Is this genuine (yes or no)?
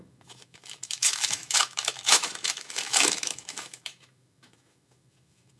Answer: no